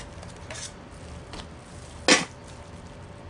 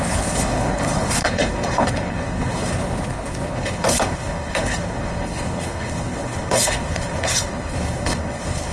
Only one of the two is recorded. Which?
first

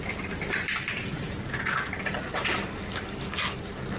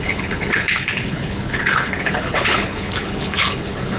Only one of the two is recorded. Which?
first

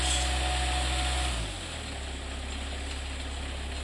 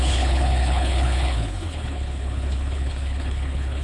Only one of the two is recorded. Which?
first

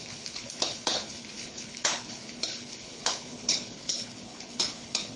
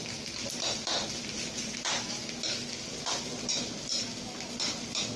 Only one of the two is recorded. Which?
second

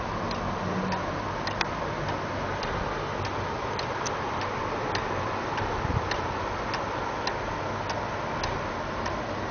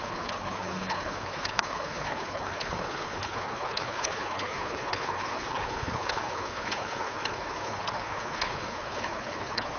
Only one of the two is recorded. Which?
first